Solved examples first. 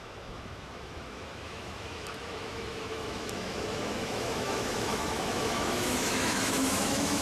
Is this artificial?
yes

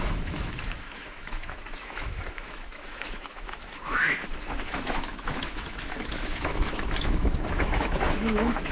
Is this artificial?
yes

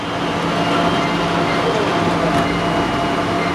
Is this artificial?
no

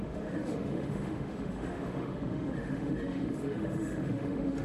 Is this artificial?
yes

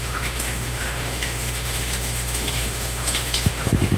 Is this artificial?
yes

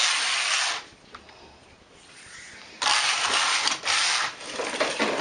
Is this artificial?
no